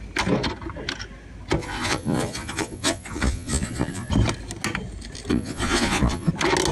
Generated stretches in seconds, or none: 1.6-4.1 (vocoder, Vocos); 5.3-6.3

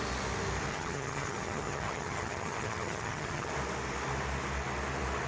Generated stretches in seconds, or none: 0.7-3.5 (vocoder, HiFi-GAN)

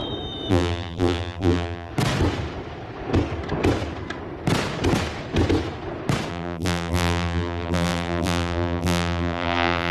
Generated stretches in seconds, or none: 0.5-1.9 (vocoder, BigVGAN v2); 6.3-9.9

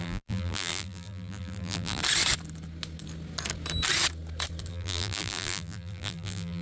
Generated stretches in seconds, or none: 0.0-2.0 (vocoder, BigVGAN v2); 4.7-6.6

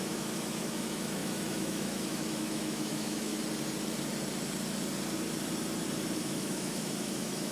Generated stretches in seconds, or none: 0.0-3.3 (autoencoder, DAC-VAE); 6.2-7.5